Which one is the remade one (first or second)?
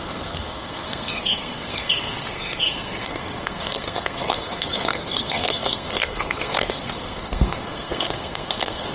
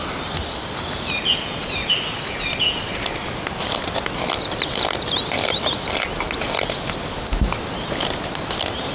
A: first